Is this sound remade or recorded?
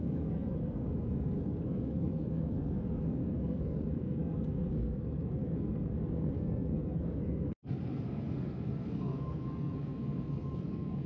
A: remade